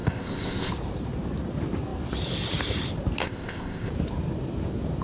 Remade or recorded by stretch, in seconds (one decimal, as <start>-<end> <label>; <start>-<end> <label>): 0.0-0.7 remade; 0.7-3.2 recorded; 3.2-3.9 remade; 3.9-5.0 recorded